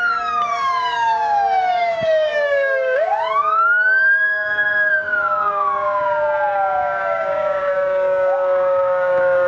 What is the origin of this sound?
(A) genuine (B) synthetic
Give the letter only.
B